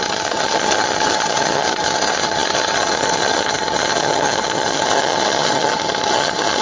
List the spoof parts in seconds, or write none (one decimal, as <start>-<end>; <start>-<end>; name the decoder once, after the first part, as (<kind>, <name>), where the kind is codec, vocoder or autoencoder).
0.0-6.6 (vocoder, HiFi-GAN)